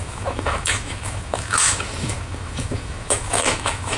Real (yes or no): no